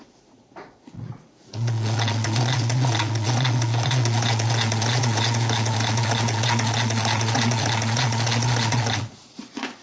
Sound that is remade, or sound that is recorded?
remade